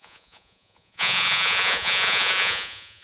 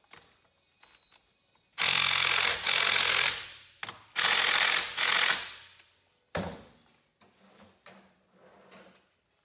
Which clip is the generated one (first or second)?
first